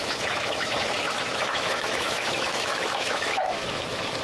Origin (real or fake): fake